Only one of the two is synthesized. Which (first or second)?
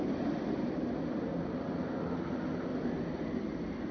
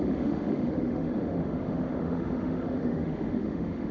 second